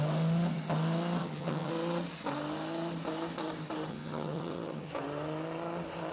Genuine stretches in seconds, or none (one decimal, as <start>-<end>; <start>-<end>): 0.0-1.2; 1.7-3.9; 4.9-6.1